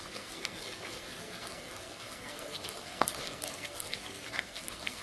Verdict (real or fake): fake